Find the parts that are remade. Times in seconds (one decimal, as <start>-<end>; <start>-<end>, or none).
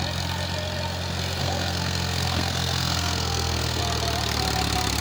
1.4-3.8